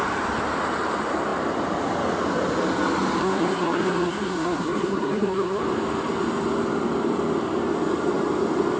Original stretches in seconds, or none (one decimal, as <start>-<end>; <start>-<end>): 0.0-3.2; 5.6-8.8